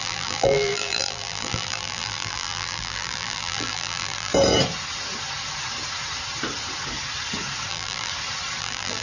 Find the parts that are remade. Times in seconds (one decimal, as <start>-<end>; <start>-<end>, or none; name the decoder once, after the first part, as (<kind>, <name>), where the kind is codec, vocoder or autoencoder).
0.0-4.3 (vocoder, BigVGAN v2); 7.7-8.1; 8.6-9.0